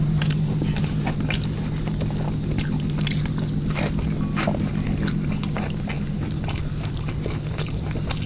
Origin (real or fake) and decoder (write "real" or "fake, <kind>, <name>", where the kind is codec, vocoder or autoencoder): real